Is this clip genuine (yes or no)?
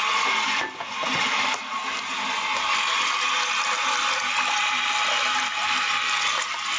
yes